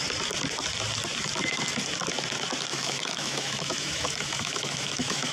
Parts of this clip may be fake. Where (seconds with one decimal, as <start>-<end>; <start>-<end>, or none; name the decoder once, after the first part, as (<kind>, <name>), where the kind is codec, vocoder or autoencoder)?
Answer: 2.7-5.3 (autoencoder, DAC-VAE)